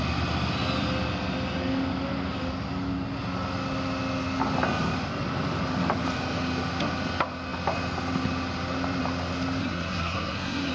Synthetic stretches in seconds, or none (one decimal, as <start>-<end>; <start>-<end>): 9.6-10.7